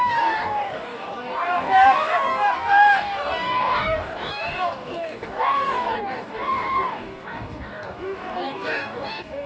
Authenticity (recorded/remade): remade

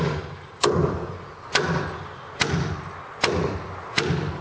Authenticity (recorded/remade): recorded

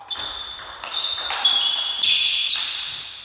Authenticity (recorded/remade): remade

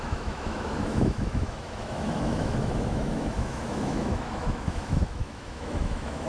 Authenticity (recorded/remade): remade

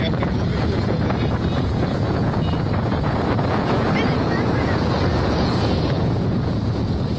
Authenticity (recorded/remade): remade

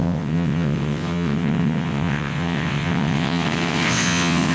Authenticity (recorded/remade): remade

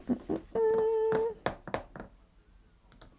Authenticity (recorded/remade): recorded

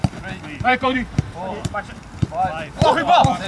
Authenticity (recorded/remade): remade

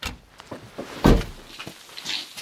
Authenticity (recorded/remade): recorded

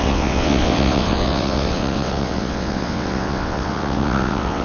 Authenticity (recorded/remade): remade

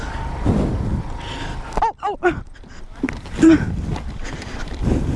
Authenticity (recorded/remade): recorded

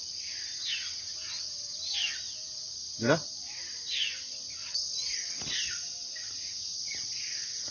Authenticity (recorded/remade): recorded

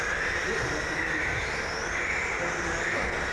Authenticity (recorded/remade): recorded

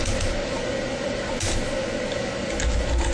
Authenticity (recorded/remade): recorded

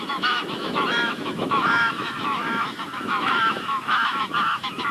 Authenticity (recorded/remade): remade